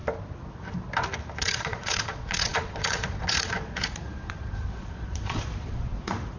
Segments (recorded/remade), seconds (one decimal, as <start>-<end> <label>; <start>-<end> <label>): 0.0-1.4 recorded; 1.4-6.4 remade